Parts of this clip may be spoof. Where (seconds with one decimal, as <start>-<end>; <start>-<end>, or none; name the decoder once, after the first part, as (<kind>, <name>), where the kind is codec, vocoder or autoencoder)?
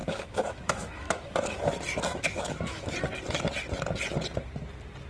0.0-1.7 (autoencoder, DAC-VAE); 2.1-2.9